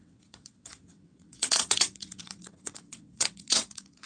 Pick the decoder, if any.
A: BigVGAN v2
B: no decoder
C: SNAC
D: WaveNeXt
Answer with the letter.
D